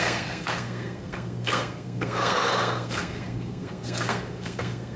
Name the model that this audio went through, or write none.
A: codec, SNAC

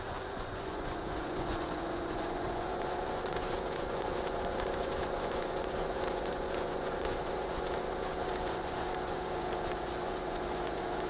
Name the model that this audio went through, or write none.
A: vocoder, Vocos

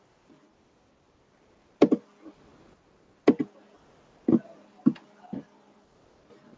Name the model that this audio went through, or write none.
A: none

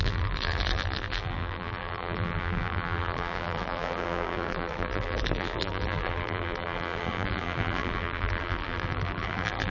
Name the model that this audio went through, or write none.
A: vocoder, BigVGAN v2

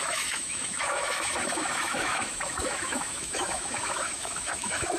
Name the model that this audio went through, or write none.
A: autoencoder, DAC-VAE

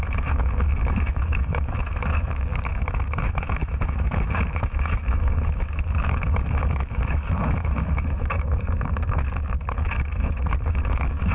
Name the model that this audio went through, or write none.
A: autoencoder, DAC-VAE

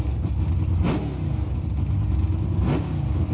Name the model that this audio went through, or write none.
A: none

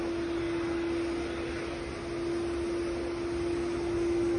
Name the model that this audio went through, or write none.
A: none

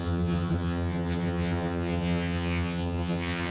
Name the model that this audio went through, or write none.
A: vocoder, HiFi-GAN